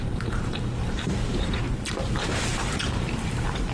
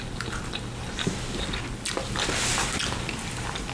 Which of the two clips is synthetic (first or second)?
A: first